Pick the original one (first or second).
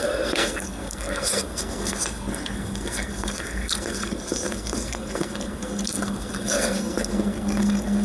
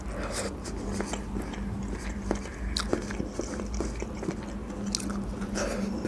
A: second